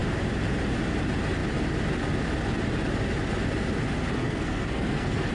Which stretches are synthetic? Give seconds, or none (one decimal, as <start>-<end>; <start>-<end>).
4.2-5.3